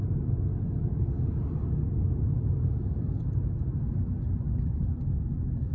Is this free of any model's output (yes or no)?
yes